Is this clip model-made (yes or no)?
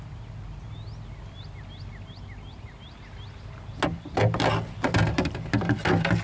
no